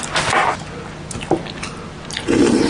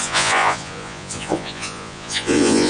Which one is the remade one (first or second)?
second